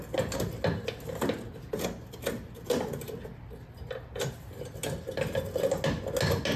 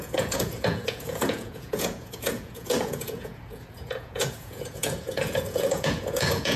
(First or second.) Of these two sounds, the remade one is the second